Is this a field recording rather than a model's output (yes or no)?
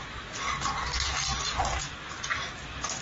yes